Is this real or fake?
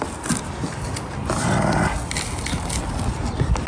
real